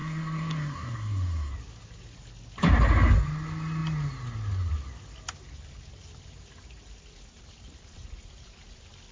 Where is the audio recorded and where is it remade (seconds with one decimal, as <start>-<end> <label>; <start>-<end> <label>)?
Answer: 0.0-1.5 remade; 1.5-9.1 recorded